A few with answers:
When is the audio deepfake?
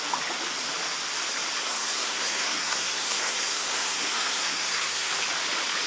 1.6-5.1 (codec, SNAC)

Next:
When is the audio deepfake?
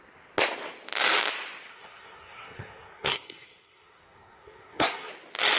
1.7-5.1 (codec, SNAC)